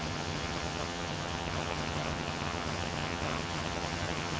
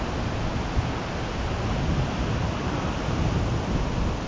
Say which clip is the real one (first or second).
second